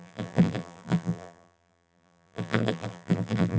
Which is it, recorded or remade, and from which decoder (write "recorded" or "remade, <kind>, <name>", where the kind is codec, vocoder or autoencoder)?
remade, vocoder, BigVGAN v2